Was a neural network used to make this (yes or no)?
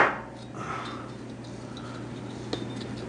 no